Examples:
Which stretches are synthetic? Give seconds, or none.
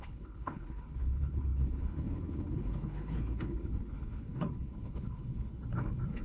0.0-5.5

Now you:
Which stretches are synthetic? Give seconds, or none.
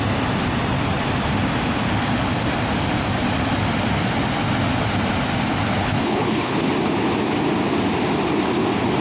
5.8-6.7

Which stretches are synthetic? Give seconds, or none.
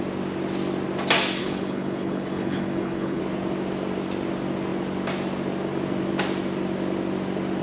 1.4-3.2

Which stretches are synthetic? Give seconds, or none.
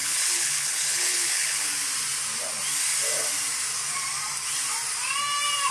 0.0-1.7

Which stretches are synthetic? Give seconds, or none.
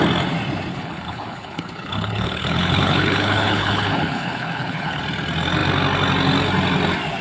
0.7-5.0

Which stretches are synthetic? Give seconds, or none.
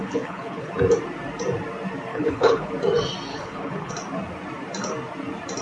0.0-0.7; 2.1-2.7; 3.3-3.9